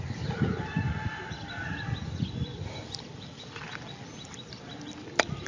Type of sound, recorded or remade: recorded